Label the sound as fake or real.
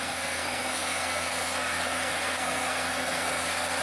fake